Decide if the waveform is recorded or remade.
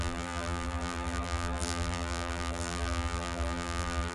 remade